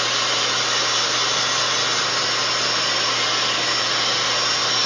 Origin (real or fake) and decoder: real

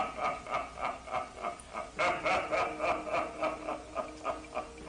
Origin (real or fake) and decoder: real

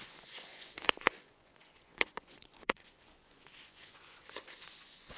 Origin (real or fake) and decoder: fake, vocoder, Vocos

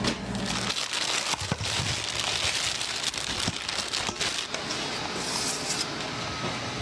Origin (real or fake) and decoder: real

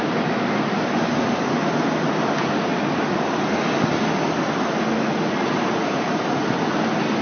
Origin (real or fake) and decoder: real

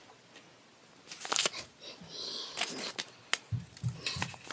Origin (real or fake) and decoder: real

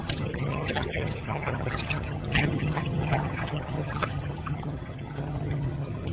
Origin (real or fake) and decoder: fake, vocoder, HiFi-GAN